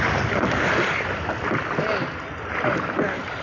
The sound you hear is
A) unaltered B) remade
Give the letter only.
A